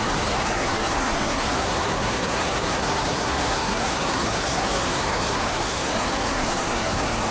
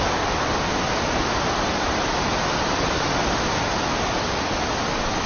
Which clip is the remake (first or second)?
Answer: first